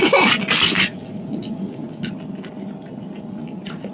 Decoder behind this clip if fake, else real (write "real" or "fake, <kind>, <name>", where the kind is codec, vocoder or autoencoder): real